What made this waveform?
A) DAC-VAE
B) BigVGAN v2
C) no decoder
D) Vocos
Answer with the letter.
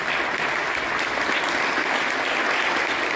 C